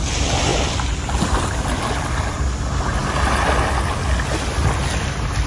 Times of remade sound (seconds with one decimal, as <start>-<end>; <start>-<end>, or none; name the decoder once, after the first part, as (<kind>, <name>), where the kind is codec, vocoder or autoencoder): none